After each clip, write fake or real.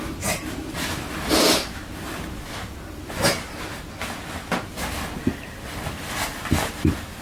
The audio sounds real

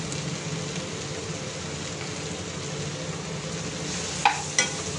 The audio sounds real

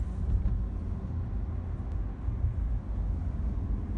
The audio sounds real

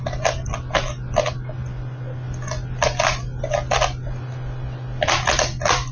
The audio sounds real